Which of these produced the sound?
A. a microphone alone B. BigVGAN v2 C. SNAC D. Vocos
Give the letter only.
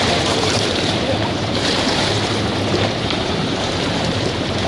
B